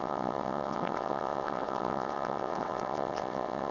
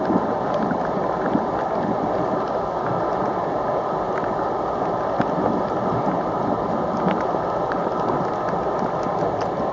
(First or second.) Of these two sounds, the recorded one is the second